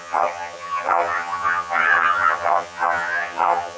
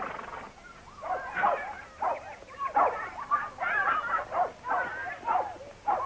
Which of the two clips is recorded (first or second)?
second